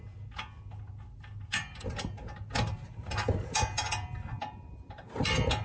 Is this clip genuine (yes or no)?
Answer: yes